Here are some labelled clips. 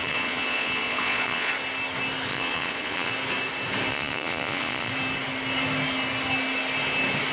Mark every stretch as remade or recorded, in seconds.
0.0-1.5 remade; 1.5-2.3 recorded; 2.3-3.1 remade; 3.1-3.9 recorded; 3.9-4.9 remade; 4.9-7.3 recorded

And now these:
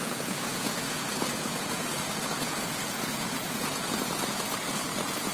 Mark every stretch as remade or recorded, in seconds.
0.0-5.3 remade

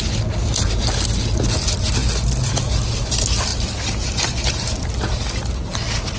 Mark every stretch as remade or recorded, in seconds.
0.0-6.2 recorded

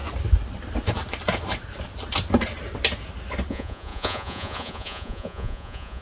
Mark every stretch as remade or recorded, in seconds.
0.0-3.5 recorded; 3.5-6.0 remade

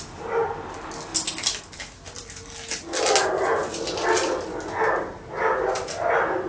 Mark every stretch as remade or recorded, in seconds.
0.0-6.5 recorded

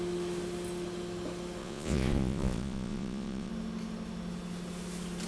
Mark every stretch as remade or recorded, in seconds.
0.0-1.6 recorded; 1.6-3.5 remade; 3.5-5.3 recorded

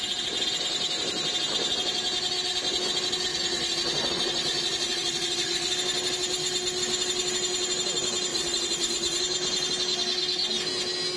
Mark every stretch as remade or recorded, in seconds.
0.0-3.3 recorded; 3.3-5.7 remade; 5.7-8.3 recorded; 8.3-9.2 remade; 9.2-11.2 recorded

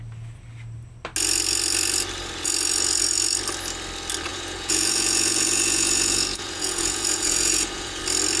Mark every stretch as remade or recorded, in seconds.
0.0-4.3 recorded; 4.3-8.0 remade; 8.0-8.4 recorded